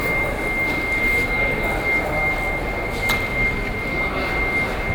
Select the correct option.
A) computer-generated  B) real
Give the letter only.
B